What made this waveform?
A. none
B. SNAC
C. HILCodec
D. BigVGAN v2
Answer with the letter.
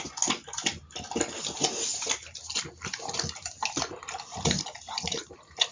A